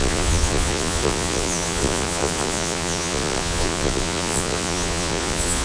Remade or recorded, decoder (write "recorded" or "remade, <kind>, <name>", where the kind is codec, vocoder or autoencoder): remade, vocoder, Vocos